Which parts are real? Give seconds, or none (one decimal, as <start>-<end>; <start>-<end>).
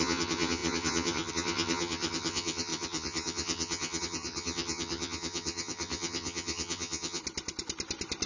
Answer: 7.2-8.3